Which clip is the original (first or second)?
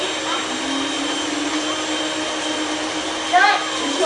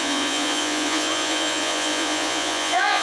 first